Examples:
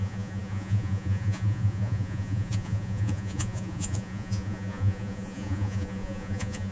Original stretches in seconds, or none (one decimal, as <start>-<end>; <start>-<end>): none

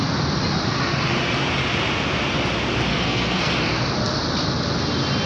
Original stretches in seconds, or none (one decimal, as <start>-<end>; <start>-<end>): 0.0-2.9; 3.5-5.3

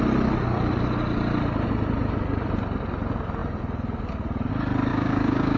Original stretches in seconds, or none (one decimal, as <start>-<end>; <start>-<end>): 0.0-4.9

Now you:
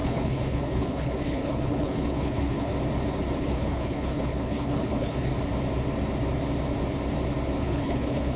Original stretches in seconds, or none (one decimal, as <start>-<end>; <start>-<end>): 2.7-3.4; 5.3-7.6

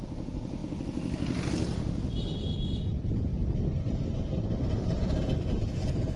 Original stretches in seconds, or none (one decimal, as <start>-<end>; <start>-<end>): 0.0-6.2